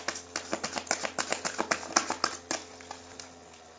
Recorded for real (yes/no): yes